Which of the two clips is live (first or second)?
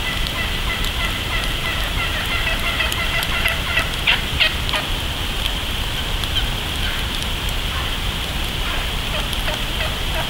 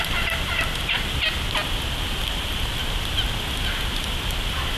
second